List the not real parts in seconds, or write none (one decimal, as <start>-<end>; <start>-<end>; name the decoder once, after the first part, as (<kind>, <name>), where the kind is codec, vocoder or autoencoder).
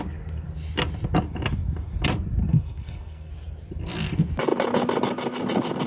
2.4-3.3 (codec, SNAC)